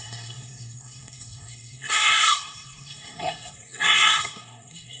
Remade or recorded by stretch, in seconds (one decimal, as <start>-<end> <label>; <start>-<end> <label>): 0.0-5.0 remade